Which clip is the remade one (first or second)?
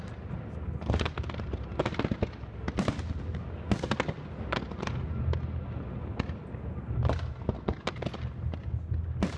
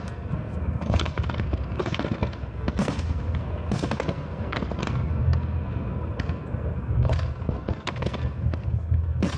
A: second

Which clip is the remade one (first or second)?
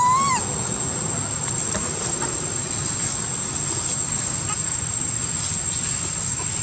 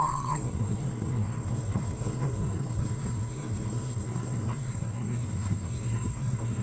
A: second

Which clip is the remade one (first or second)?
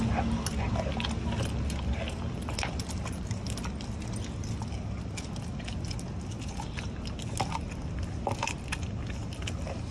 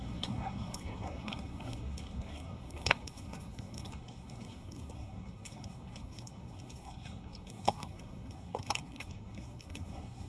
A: second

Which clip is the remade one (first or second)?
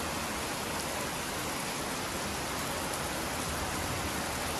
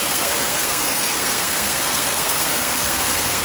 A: second